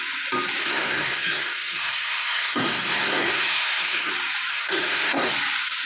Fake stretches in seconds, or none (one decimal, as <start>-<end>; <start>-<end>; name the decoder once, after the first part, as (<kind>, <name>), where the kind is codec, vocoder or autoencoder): 0.6-4.1 (codec, SNAC); 4.5-5.3